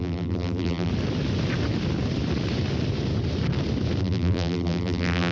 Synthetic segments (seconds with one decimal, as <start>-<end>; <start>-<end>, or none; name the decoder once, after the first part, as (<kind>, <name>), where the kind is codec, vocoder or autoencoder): 0.0-0.9 (vocoder, BigVGAN v2); 4.0-5.3